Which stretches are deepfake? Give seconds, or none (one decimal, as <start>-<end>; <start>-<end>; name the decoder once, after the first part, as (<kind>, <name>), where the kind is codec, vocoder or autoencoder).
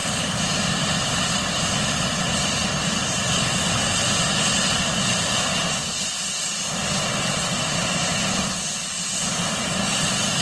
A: none